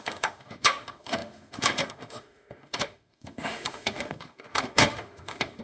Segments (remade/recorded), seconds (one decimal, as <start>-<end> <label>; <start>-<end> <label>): 0.0-5.6 remade

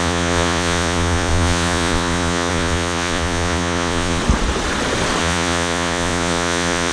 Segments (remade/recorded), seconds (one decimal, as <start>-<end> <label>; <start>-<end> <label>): 0.0-4.2 remade; 4.2-5.2 recorded; 5.2-6.9 remade

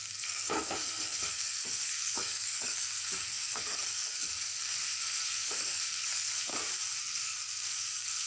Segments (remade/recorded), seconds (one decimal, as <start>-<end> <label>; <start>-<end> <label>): 0.0-6.5 remade; 6.5-7.0 recorded; 7.0-8.3 remade

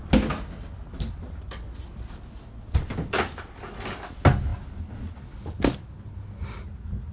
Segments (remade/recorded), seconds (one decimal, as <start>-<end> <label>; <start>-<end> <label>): 0.0-7.1 recorded